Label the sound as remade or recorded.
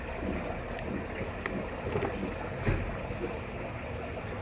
recorded